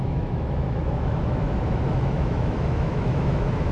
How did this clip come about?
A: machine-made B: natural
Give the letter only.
A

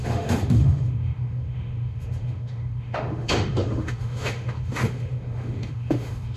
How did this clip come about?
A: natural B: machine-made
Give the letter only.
B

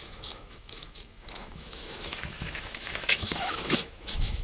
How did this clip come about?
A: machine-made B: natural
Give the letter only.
A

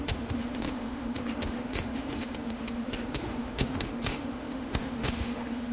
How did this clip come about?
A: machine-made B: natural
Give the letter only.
A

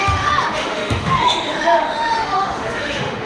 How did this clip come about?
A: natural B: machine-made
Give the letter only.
B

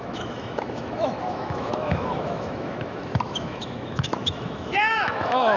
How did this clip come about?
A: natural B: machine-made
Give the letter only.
B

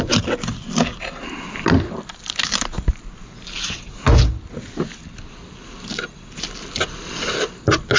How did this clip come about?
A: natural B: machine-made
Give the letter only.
A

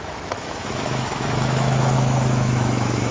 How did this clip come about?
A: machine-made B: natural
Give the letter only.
A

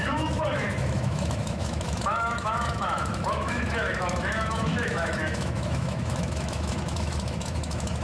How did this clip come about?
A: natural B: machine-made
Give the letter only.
B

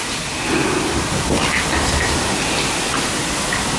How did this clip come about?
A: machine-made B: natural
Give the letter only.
B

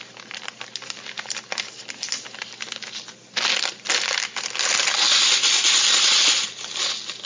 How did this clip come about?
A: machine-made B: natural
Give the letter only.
B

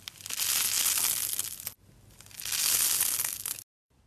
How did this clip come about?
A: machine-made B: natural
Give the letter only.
B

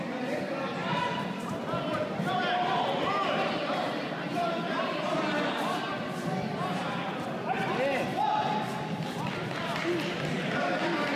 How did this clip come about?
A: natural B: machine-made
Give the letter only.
A